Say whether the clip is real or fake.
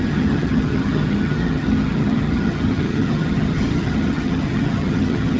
fake